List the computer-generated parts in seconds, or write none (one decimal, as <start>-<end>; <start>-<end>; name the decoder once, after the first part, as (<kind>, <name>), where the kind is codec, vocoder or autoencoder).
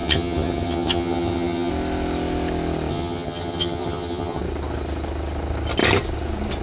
0.0-1.7 (vocoder, HiFi-GAN); 2.9-4.4